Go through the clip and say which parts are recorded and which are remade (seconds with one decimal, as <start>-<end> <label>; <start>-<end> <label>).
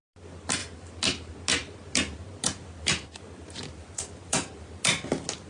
0.0-0.6 recorded; 0.6-1.3 remade; 1.3-1.8 recorded; 1.8-4.8 remade; 4.8-5.5 recorded